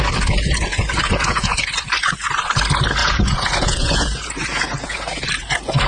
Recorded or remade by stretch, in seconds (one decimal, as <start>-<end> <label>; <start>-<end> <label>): 0.0-0.7 recorded; 0.7-1.7 remade; 1.7-3.0 recorded; 3.0-5.3 remade; 5.3-5.9 recorded

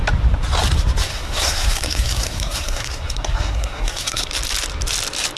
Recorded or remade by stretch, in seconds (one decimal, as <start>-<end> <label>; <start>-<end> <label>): 0.0-1.1 recorded; 1.1-4.3 remade; 4.3-5.4 recorded

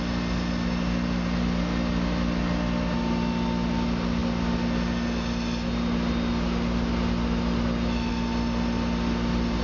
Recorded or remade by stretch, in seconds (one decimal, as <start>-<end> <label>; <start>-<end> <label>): 0.0-9.6 recorded

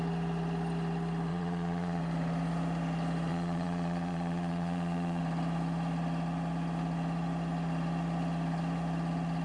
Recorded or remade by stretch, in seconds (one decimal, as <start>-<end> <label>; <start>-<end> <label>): 0.0-1.3 recorded; 1.3-2.0 remade; 2.0-3.3 recorded; 3.3-5.2 remade; 5.2-9.4 recorded

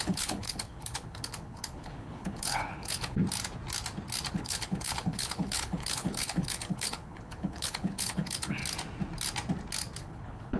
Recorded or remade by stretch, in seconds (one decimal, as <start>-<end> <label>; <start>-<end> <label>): 0.0-3.2 remade; 3.2-4.3 recorded; 4.3-8.6 remade; 8.6-10.0 recorded; 10.0-10.6 remade